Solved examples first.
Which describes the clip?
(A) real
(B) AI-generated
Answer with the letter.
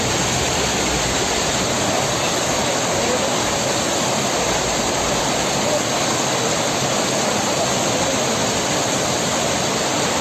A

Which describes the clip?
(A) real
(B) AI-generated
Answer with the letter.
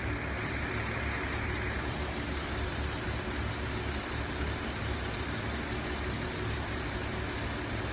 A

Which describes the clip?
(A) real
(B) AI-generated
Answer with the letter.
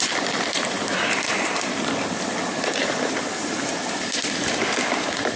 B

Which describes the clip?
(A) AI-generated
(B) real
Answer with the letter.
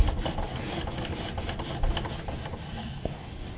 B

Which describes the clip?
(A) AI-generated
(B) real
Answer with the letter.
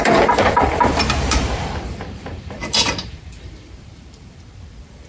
A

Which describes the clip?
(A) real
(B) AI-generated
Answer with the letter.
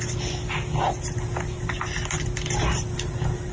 A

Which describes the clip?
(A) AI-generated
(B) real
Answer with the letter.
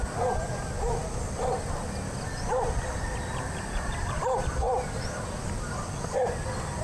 B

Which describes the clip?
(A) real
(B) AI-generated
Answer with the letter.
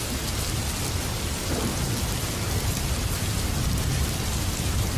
A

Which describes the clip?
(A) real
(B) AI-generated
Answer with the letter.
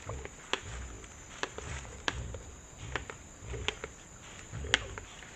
A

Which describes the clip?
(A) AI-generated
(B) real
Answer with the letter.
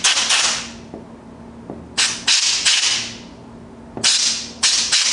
B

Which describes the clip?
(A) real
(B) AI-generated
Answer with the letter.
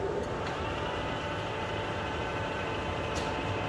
B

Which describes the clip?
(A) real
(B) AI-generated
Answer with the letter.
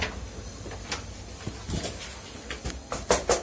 A